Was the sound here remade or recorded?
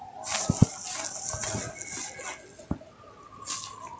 recorded